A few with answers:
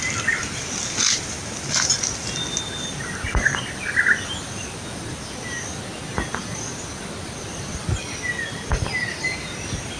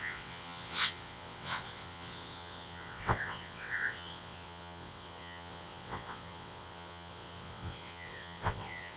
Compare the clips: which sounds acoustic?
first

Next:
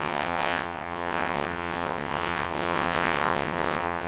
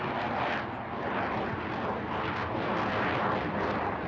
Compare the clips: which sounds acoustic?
second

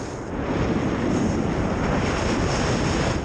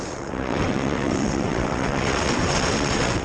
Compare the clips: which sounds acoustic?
first